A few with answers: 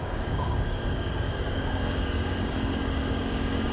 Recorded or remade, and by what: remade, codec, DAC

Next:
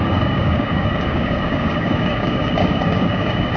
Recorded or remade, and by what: remade, codec, DAC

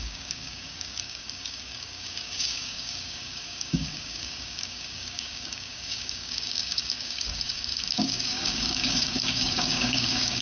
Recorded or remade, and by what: remade, codec, DAC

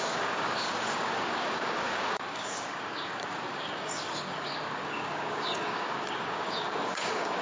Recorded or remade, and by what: remade, codec, DAC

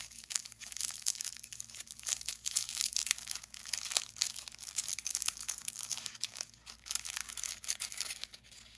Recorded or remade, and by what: remade, codec, DAC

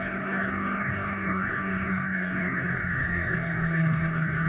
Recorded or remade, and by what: remade, codec, DAC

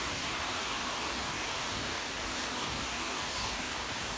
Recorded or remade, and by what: remade, codec, DAC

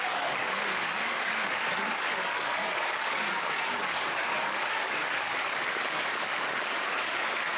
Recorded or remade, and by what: remade, codec, DAC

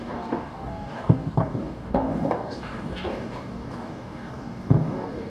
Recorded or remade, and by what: remade, codec, DAC